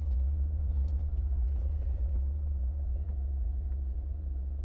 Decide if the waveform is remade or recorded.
remade